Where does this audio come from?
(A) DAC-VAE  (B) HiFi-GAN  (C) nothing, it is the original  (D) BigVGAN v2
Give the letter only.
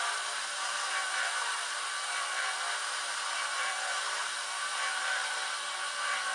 D